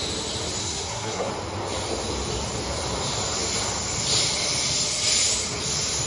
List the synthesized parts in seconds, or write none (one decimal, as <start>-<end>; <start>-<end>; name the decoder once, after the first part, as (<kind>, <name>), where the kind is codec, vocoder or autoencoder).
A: 0.6-1.3 (codec, SNAC)